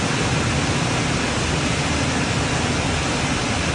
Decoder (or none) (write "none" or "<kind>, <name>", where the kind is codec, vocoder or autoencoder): none